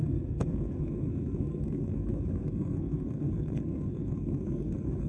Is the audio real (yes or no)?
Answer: no